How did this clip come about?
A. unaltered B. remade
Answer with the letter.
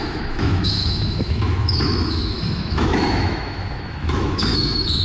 B